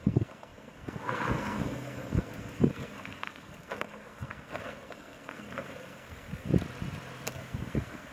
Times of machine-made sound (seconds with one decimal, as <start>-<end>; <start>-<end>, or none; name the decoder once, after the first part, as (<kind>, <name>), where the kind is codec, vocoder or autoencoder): 0.0-6.5 (codec, SNAC); 7.3-8.1